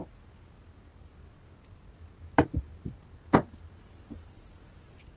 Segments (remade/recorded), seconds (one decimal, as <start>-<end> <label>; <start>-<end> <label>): 0.0-5.2 recorded